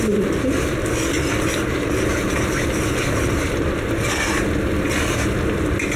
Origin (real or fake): real